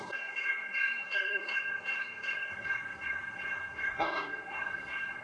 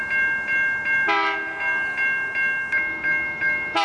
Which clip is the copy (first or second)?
first